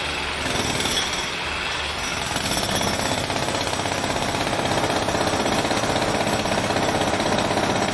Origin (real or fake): real